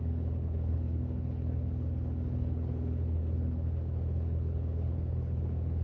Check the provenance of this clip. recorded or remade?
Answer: remade